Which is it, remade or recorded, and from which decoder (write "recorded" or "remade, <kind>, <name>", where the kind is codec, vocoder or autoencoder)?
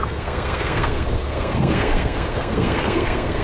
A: remade, codec, SNAC